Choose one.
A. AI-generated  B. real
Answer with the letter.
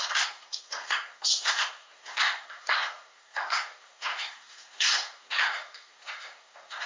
A